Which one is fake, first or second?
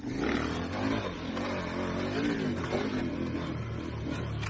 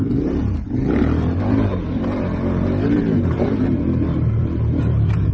second